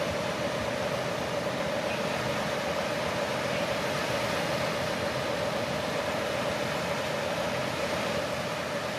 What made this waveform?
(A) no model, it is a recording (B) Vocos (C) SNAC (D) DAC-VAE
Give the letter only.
A